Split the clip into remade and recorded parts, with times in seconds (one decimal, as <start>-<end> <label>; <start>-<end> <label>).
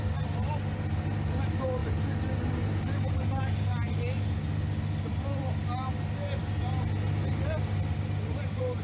0.0-8.8 recorded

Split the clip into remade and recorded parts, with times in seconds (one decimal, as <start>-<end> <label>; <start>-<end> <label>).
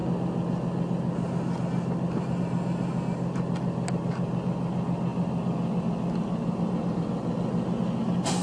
0.0-8.4 recorded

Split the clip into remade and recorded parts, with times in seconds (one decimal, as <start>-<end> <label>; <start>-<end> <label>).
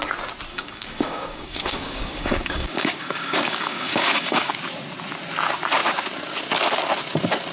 0.0-0.5 recorded; 0.5-4.5 remade; 4.5-7.5 recorded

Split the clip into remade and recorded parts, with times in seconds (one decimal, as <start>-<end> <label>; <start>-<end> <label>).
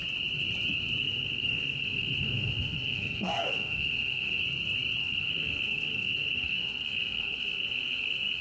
0.0-1.0 recorded; 1.0-4.4 remade; 4.4-5.0 recorded; 5.0-8.4 remade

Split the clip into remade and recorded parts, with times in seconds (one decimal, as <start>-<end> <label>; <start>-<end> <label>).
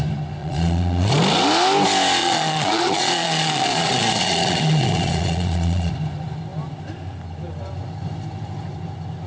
0.0-0.4 recorded; 0.4-1.1 remade; 1.1-2.2 recorded; 2.2-5.9 remade; 5.9-9.3 recorded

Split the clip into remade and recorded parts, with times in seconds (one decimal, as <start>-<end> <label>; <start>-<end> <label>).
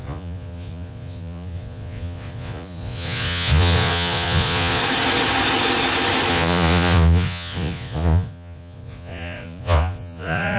0.0-4.8 remade; 4.8-6.3 recorded; 6.3-10.6 remade